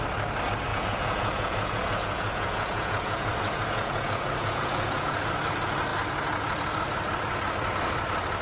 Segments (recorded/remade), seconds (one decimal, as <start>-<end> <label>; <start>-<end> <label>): 0.0-0.7 recorded; 0.7-5.2 remade; 5.2-8.4 recorded